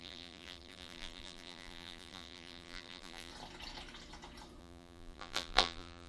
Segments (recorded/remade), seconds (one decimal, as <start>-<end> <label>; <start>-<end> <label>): 0.0-3.3 remade; 3.3-4.6 recorded; 4.6-6.1 remade

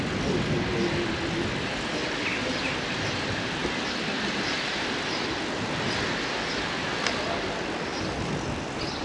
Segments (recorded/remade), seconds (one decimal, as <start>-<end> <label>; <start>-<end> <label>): 0.0-2.3 recorded; 2.3-2.8 remade; 2.8-9.0 recorded

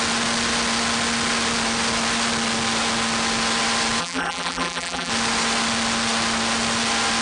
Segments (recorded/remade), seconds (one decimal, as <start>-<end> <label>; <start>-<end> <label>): 0.0-4.0 recorded; 4.0-5.1 remade; 5.1-7.2 recorded

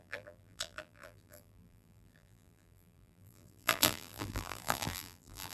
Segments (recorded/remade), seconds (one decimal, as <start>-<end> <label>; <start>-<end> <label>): 0.0-5.5 remade

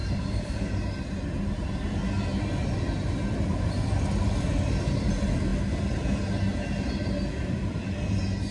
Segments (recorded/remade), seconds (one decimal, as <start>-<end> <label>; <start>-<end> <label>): 0.0-1.2 remade; 1.2-8.5 recorded

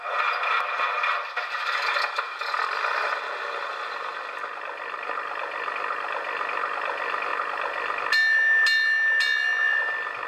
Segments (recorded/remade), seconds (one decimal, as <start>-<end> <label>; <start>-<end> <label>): 0.0-10.3 recorded